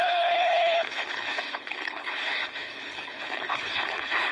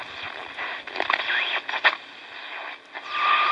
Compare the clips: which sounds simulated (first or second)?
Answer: first